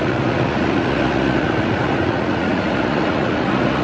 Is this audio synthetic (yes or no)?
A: yes